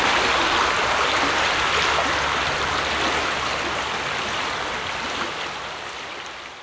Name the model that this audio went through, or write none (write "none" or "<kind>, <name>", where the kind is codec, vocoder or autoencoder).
none